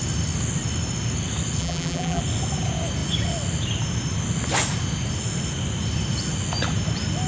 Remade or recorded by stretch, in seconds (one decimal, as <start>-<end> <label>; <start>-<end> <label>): 0.0-1.6 recorded; 1.6-2.2 remade; 2.2-7.3 recorded